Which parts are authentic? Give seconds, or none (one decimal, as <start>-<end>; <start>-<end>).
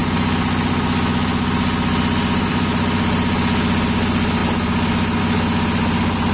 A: 0.0-6.3